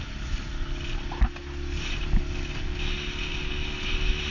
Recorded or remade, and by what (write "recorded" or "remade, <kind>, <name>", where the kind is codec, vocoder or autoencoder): recorded